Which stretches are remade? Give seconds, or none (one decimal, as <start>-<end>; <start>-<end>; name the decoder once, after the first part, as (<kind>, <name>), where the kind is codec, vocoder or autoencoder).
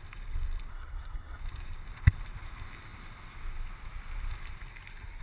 0.7-1.4 (codec, SNAC)